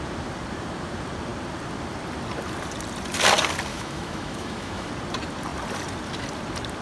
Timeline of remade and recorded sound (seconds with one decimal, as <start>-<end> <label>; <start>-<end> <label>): 0.0-3.7 recorded; 3.7-4.9 remade; 4.9-6.8 recorded